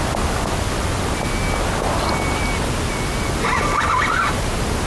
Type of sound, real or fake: real